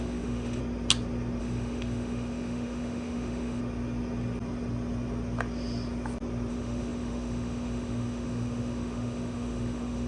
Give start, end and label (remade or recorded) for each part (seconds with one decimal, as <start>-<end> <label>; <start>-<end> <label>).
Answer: 0.0-0.6 remade; 0.6-1.4 recorded; 1.4-3.6 remade; 3.6-6.5 recorded; 6.5-10.1 remade